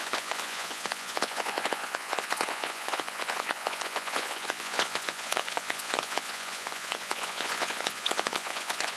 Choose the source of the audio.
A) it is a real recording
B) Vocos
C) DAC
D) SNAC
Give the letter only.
B